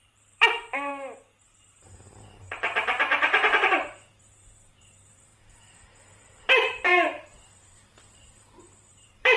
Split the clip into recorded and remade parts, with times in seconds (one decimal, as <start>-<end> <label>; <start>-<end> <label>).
0.0-0.9 remade; 0.9-1.6 recorded; 1.6-9.4 remade